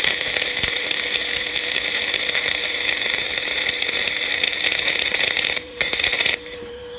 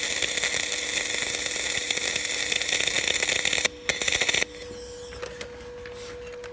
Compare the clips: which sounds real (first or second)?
second